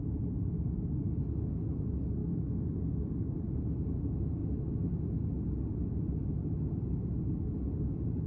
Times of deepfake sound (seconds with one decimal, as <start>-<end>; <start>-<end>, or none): none

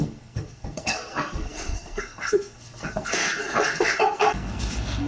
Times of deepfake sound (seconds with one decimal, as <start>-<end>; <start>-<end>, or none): 0.0-5.1

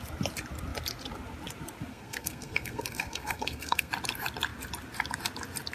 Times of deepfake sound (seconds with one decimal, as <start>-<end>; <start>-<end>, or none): 1.9-3.9

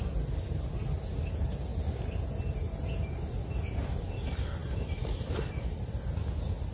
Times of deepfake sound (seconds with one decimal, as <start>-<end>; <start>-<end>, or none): none

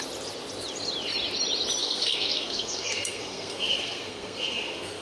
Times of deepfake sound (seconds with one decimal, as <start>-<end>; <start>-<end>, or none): 1.8-5.0

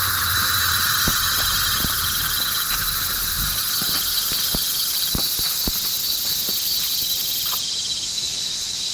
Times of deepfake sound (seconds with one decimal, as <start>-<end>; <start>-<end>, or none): none